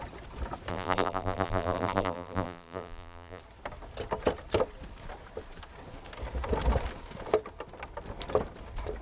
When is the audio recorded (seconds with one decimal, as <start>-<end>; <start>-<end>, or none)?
0.0-0.7; 3.4-9.0